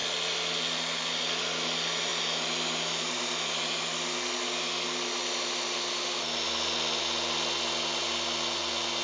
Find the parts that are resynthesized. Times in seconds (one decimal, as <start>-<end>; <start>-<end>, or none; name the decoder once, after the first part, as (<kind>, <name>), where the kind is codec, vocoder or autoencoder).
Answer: none